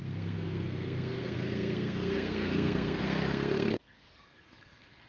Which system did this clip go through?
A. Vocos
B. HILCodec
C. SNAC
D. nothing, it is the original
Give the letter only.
C